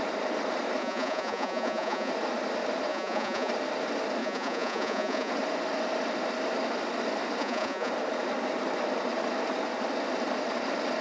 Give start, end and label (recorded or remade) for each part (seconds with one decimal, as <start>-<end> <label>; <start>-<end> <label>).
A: 0.0-0.8 recorded; 0.8-2.1 remade; 2.1-2.9 recorded; 2.9-3.5 remade; 3.5-4.2 recorded; 4.2-5.3 remade; 5.3-7.4 recorded; 7.4-7.9 remade; 7.9-11.0 recorded

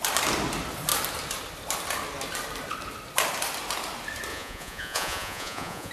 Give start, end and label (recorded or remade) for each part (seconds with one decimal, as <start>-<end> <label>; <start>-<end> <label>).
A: 0.0-4.3 recorded; 4.3-5.9 remade

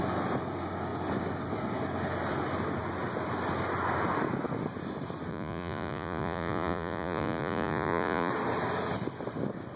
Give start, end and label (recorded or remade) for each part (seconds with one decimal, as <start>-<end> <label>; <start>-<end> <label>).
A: 0.0-5.3 recorded; 5.3-8.3 remade; 8.3-9.8 recorded

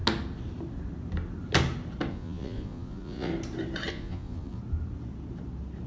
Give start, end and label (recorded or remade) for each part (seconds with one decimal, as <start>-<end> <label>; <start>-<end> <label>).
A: 0.0-2.1 recorded; 2.1-3.3 remade; 3.3-3.9 recorded; 3.9-4.6 remade; 4.6-5.9 recorded

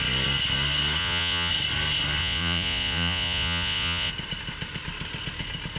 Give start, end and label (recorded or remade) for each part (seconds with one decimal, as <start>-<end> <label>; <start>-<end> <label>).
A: 0.0-1.0 recorded; 1.0-1.5 remade; 1.5-2.2 recorded; 2.2-4.1 remade; 4.1-5.8 recorded

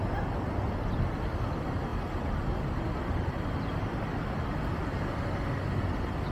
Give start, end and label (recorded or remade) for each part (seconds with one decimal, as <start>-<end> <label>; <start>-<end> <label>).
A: 0.0-6.3 recorded

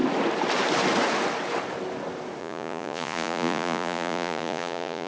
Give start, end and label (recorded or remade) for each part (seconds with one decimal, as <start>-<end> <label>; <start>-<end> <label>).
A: 0.0-2.4 recorded; 2.4-5.1 remade